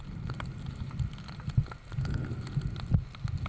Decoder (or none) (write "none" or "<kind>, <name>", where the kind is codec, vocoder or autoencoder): none